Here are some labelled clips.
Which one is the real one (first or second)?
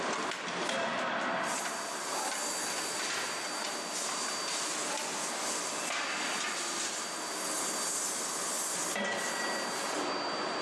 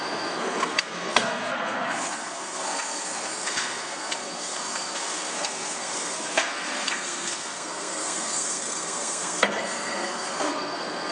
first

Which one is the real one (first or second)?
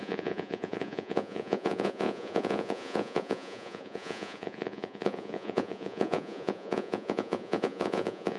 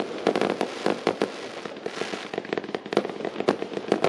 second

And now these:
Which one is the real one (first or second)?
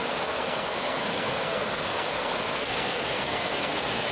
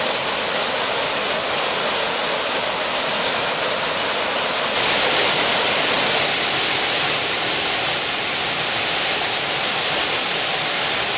second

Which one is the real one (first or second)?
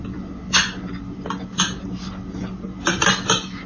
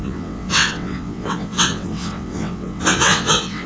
first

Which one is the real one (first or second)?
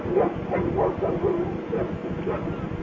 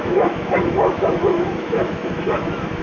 first